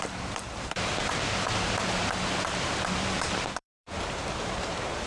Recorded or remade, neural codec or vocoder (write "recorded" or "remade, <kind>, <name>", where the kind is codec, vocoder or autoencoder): remade, vocoder, BigVGAN v2